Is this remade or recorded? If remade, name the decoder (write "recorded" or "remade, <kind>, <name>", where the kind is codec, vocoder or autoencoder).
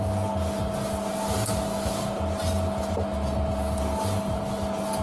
recorded